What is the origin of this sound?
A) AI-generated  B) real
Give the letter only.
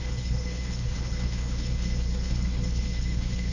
A